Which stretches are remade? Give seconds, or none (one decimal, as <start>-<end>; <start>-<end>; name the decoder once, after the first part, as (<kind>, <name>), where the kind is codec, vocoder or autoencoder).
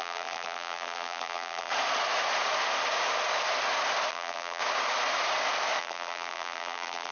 0.0-1.7 (vocoder, BigVGAN v2); 4.1-4.6; 5.8-7.1